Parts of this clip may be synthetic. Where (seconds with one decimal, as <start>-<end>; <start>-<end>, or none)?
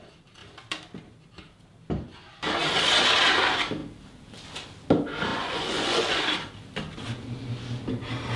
5.3-6.2